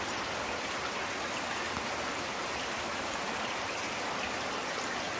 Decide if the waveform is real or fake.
real